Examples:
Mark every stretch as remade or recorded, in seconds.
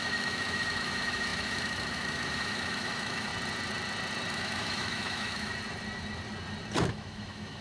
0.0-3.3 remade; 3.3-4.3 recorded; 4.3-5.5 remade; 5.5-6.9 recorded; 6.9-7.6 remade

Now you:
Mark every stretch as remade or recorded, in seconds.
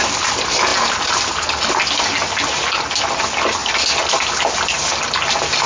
0.0-5.7 recorded